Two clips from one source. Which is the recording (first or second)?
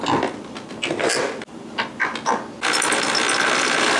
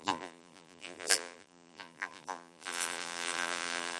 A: first